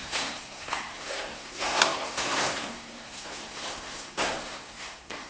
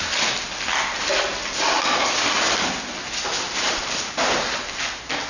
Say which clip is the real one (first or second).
second